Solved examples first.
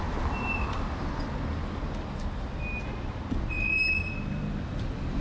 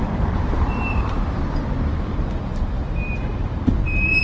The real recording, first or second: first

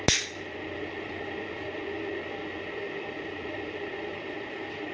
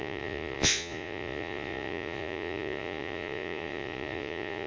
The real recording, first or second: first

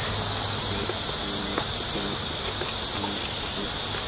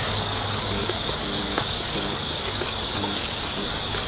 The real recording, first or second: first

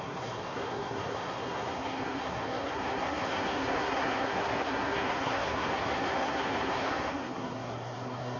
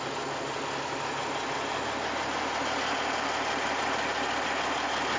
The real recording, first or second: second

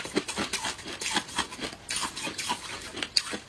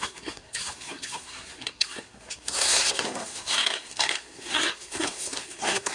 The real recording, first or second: first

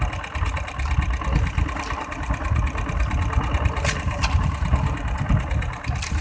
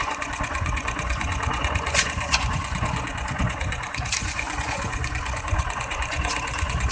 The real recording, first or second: first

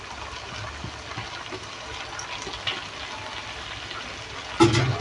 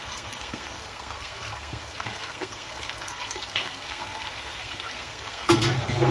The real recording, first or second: first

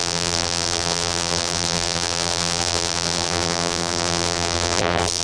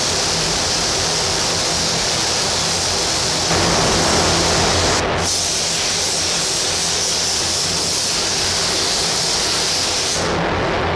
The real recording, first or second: second